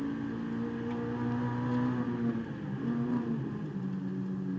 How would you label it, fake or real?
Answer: real